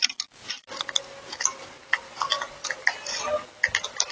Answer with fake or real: real